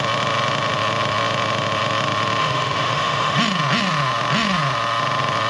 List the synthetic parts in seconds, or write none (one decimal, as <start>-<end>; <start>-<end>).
2.4-3.4